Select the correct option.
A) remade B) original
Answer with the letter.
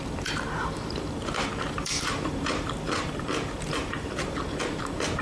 A